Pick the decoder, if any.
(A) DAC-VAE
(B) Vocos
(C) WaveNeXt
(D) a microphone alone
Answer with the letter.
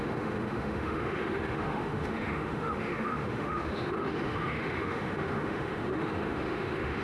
A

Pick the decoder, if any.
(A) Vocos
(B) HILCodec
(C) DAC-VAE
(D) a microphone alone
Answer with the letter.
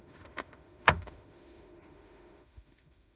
C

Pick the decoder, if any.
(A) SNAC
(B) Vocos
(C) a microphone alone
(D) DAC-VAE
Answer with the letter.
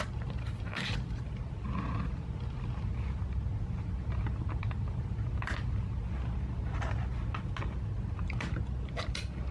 C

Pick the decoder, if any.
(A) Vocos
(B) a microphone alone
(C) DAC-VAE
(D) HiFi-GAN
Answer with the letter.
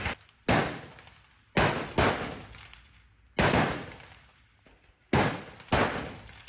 B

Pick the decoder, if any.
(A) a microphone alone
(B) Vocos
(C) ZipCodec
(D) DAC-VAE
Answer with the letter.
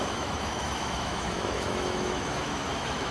D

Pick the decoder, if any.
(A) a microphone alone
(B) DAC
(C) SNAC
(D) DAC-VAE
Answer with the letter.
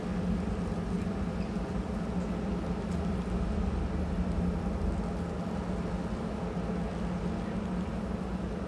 A